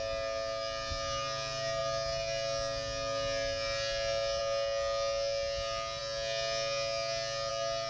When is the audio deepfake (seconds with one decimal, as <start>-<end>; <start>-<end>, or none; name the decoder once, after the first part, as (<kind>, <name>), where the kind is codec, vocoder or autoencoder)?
none